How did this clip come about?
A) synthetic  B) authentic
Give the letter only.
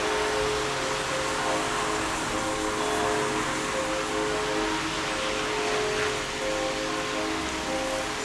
B